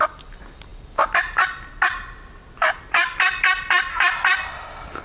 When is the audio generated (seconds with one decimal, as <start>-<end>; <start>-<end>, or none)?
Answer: none